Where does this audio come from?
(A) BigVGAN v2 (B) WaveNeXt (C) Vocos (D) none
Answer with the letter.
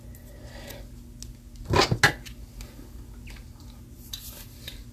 D